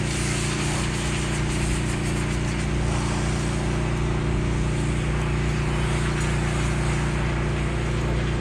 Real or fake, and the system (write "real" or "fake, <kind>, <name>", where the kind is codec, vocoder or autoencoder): real